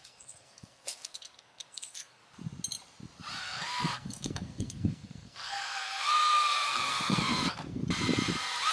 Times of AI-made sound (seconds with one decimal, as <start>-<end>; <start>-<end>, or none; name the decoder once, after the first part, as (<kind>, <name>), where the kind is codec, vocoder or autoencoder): 0.0-2.2 (codec, SNAC); 3.4-7.8